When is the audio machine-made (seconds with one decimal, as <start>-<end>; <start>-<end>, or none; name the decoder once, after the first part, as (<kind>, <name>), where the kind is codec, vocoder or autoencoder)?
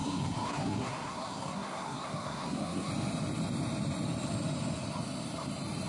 0.0-2.9 (codec, SNAC)